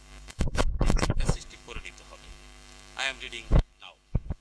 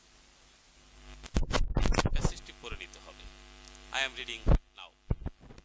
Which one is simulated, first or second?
first